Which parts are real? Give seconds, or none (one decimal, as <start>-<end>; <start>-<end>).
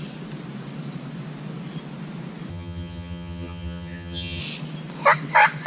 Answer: 0.0-2.5; 4.4-5.7